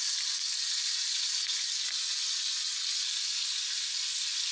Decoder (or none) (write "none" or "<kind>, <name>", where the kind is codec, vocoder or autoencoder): none